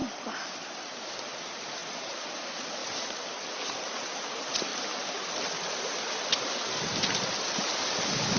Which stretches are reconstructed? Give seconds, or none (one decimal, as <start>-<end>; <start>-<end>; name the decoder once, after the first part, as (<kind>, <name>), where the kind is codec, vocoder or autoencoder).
0.0-1.1 (vocoder, BigVGAN v2); 1.8-2.3; 2.8-3.5; 4.7-6.4